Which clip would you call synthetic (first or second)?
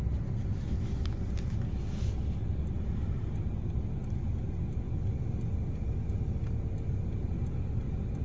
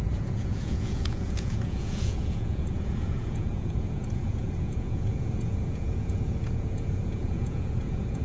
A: second